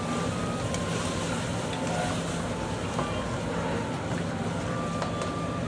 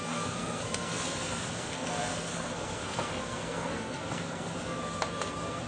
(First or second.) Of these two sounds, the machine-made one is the second